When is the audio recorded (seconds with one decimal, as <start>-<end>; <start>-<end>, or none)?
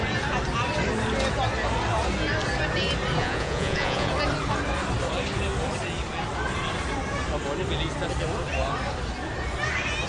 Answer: 0.0-3.2; 4.1-10.1